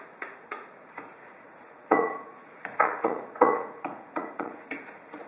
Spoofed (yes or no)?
yes